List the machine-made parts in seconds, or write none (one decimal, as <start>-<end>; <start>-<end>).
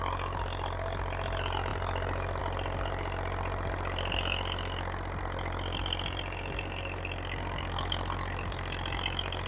none